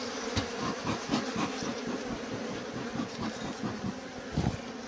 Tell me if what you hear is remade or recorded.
recorded